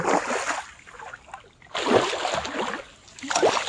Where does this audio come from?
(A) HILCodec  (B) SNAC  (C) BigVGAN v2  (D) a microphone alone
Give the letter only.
D